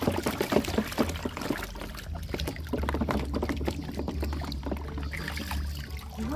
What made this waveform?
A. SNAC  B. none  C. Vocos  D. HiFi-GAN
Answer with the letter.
B